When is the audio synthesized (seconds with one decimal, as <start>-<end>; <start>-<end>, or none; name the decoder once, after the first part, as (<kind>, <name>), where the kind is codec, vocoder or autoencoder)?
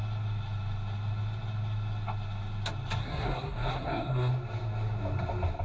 3.0-4.3 (codec, SNAC)